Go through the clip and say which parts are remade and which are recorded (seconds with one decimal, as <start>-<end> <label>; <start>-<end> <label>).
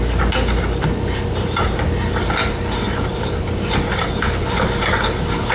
0.0-5.5 recorded